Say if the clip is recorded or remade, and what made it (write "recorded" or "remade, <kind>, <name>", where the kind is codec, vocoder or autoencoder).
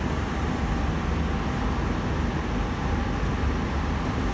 recorded